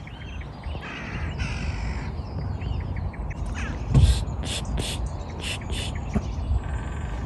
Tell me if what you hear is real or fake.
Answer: real